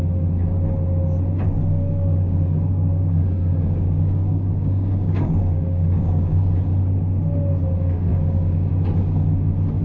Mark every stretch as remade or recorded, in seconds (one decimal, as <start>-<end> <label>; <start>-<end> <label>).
0.0-1.7 recorded; 1.7-6.5 remade; 6.5-8.1 recorded; 8.1-8.7 remade; 8.7-9.8 recorded